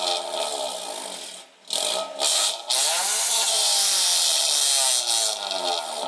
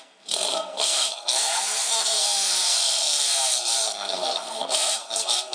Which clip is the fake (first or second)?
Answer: second